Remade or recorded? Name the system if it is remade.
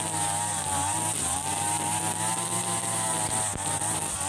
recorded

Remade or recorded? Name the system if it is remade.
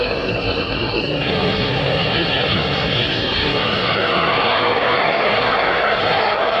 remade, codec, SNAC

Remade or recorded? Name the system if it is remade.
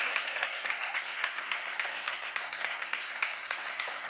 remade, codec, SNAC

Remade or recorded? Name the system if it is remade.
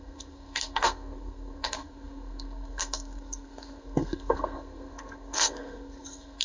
remade, codec, SNAC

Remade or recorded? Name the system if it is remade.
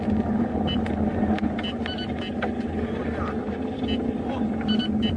recorded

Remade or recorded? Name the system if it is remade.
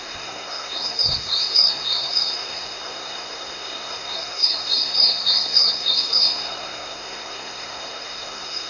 remade, codec, SNAC